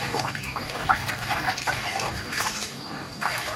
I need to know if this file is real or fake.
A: fake